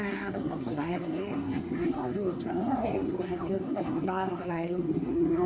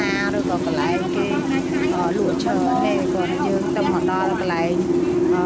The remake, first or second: first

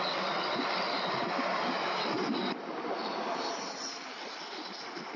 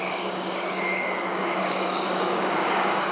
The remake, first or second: second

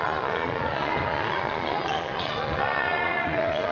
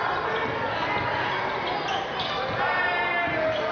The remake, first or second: first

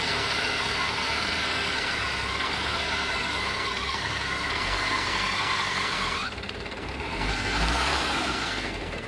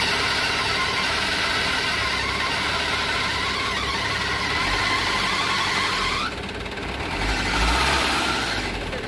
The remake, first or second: first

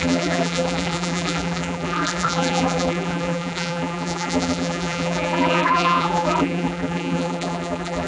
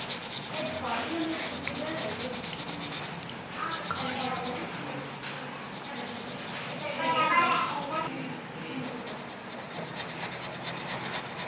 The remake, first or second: first